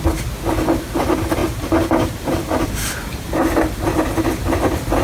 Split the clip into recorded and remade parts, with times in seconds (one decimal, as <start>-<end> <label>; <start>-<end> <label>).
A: 0.0-1.4 recorded; 1.4-3.7 remade; 3.7-5.0 recorded